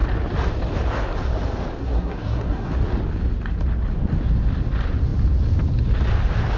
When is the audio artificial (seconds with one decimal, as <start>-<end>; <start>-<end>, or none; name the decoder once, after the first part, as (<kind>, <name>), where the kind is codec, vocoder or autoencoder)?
1.8-2.7 (codec, SNAC)